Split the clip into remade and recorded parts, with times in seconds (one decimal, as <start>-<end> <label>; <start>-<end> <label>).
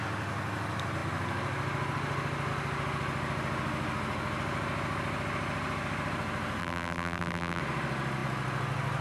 0.0-6.6 recorded; 6.6-7.6 remade; 7.6-9.0 recorded